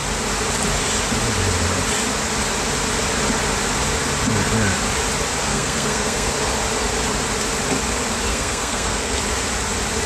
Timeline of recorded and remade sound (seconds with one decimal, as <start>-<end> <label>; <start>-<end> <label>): 0.0-5.4 recorded; 5.4-6.3 remade; 6.3-8.3 recorded; 8.3-9.2 remade; 9.2-10.1 recorded